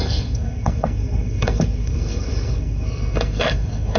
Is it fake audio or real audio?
fake